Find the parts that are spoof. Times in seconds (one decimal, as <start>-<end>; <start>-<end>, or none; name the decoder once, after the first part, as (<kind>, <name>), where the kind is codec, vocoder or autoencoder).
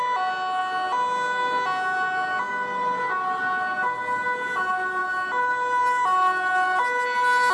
none